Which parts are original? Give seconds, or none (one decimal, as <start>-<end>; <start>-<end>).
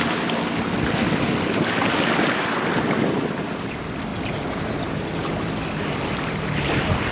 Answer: 0.0-7.1